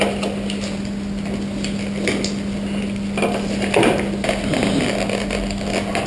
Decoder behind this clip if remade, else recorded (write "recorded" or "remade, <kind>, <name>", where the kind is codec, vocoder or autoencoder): recorded